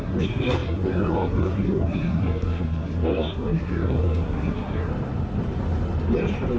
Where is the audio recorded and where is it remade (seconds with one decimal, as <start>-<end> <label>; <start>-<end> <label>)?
0.0-4.9 remade; 4.9-6.6 recorded